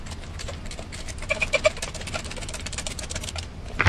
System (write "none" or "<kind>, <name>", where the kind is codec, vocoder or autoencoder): vocoder, BigVGAN v2